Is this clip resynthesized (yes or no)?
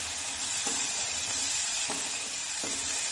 yes